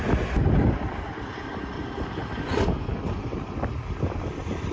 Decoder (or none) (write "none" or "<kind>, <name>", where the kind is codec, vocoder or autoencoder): none